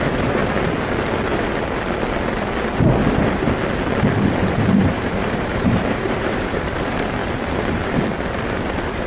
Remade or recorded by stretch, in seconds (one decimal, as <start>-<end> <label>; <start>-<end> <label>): 0.0-0.4 remade; 0.4-4.4 recorded; 4.4-7.2 remade; 7.2-8.3 recorded; 8.3-9.1 remade